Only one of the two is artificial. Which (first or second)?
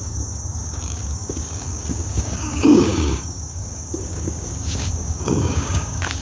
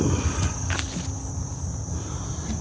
first